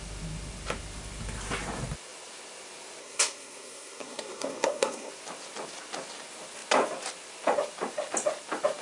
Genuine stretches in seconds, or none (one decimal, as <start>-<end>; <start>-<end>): 0.0-3.0; 5.1-8.8